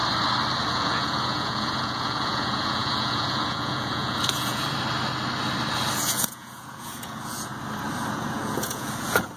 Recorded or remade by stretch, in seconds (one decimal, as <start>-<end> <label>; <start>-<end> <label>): 0.0-0.7 recorded; 0.7-4.6 remade; 4.6-6.0 recorded; 6.0-7.5 remade; 7.5-8.1 recorded; 8.1-9.4 remade